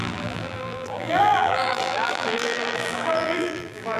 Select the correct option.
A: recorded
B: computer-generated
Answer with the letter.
B